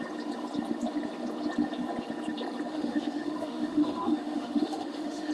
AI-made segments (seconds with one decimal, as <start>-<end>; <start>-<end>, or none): 2.7-5.3